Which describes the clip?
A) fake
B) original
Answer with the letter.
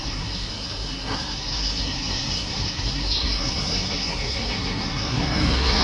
A